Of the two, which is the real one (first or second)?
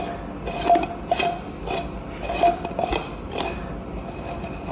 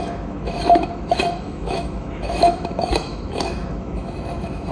first